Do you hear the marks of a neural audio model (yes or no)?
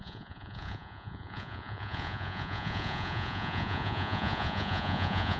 yes